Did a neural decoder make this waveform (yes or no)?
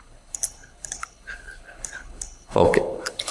yes